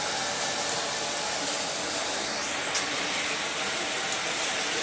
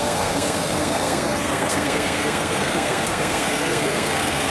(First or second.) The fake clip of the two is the second